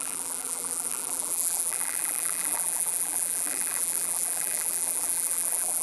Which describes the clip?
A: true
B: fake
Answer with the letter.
B